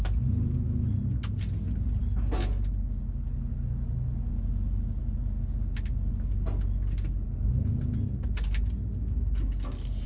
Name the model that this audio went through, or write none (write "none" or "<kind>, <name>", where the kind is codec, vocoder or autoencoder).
none